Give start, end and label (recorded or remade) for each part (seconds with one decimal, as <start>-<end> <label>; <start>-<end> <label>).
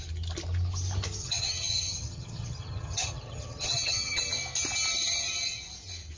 0.0-1.2 recorded; 1.2-4.2 remade; 4.2-6.2 recorded